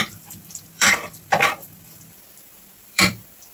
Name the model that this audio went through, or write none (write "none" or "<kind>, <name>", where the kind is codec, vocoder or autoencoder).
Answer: vocoder, BigVGAN v2